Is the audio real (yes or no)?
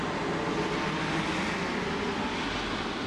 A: yes